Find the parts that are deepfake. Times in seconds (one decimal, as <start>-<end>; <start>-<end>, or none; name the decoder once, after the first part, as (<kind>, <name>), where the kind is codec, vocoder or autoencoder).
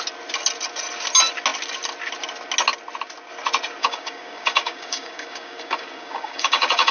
3.8-6.9 (codec, DAC)